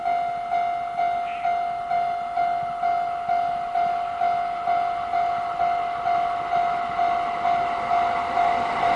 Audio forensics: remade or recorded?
recorded